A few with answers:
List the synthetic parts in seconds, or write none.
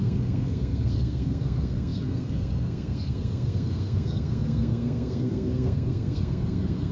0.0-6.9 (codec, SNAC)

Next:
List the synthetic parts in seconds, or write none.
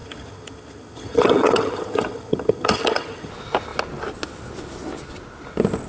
0.0-3.3 (vocoder, HiFi-GAN)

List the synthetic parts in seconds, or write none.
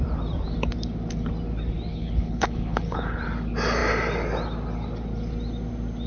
1.9-3.2 (codec, HILCodec)